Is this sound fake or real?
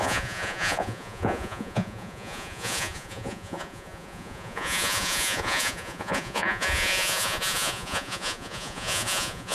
fake